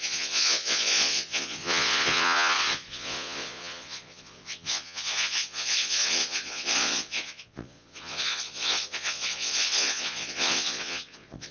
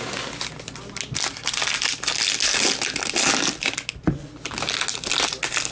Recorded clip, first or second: second